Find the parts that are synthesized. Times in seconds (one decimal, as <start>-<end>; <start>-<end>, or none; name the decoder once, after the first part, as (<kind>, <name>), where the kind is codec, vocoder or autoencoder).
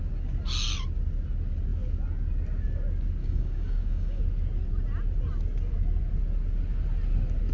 3.2-4.2 (codec, DAC)